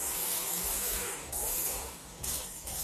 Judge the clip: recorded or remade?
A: remade